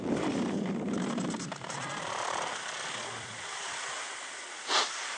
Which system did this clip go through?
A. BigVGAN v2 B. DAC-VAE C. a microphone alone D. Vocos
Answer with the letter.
C